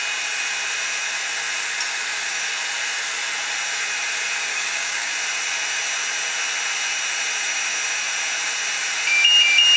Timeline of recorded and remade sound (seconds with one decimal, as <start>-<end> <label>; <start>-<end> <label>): 0.0-4.5 recorded; 4.5-5.1 remade; 5.1-9.8 recorded